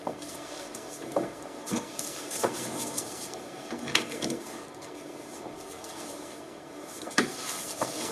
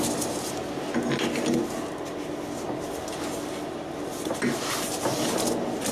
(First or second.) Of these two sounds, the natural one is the second